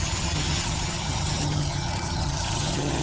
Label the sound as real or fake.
fake